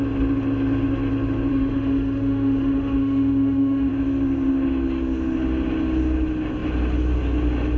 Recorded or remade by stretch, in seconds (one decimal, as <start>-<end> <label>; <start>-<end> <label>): 0.0-1.5 recorded; 1.5-3.9 remade; 3.9-7.8 recorded